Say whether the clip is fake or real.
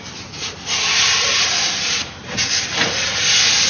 real